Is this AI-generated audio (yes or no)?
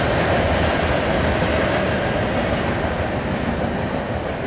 no